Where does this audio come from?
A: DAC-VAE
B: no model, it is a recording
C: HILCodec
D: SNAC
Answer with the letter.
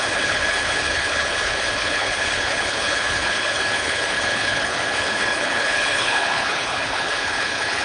C